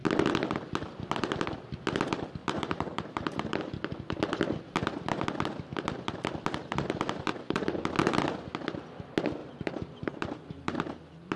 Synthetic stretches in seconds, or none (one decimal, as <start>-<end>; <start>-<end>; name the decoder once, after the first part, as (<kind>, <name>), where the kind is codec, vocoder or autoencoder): 2.4-3.6 (vocoder, BigVGAN v2); 7.3-7.9; 9.4-10.8